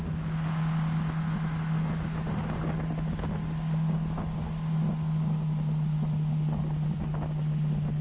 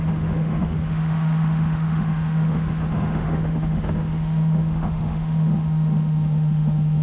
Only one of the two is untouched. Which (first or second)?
first